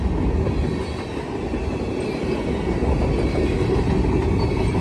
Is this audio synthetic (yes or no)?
no